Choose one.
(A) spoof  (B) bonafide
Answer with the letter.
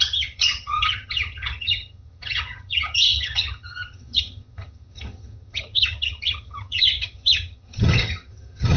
A